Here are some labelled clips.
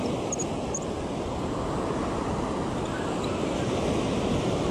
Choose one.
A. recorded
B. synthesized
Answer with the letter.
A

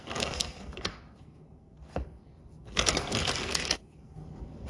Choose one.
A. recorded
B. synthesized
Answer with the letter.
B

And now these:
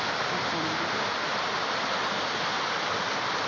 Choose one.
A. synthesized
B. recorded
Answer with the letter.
B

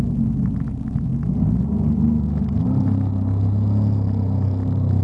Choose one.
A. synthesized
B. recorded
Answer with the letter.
B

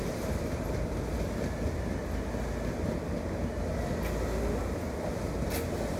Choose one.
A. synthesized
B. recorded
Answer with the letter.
B